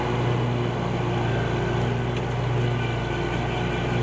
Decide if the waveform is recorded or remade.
recorded